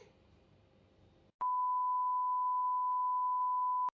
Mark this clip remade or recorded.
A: recorded